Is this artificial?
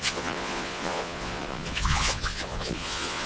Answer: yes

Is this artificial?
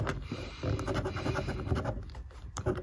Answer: yes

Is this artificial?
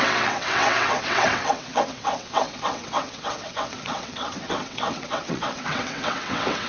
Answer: yes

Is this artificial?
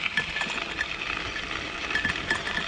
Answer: no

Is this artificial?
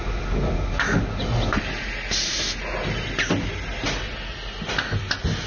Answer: no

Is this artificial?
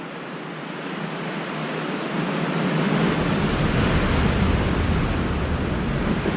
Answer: no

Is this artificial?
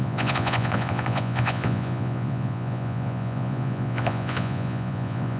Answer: yes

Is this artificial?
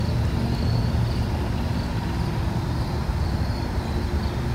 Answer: no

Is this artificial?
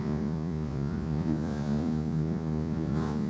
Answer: yes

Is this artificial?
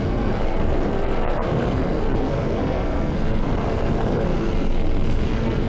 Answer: yes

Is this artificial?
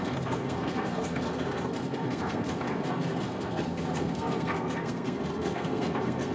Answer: yes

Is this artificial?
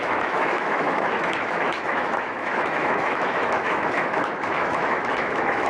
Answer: yes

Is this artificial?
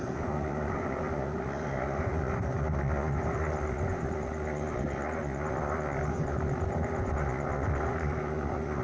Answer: yes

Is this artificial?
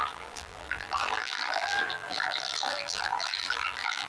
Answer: yes